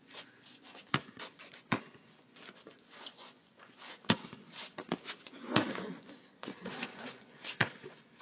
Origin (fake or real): fake